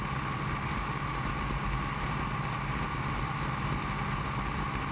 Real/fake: real